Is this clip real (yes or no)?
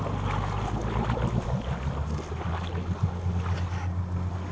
yes